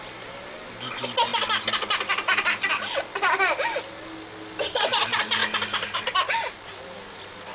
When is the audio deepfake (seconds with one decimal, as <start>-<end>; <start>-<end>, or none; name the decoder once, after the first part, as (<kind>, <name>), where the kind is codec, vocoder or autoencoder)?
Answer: none